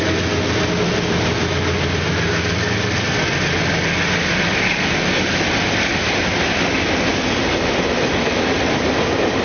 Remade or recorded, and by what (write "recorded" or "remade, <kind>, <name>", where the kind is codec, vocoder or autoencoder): recorded